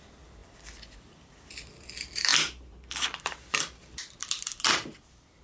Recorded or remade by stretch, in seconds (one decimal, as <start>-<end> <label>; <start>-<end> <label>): 0.0-5.4 remade